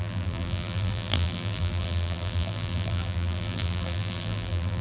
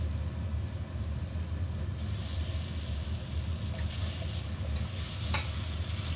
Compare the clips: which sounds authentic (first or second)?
second